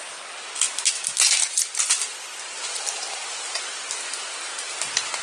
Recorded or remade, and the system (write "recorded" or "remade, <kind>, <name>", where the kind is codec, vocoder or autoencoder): recorded